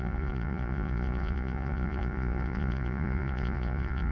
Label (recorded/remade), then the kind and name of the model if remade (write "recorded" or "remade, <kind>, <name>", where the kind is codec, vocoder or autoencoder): remade, vocoder, Vocos